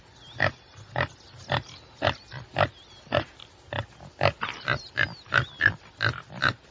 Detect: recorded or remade recorded